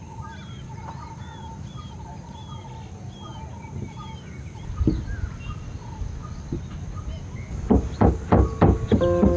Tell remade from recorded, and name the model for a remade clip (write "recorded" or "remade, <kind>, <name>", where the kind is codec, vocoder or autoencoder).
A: recorded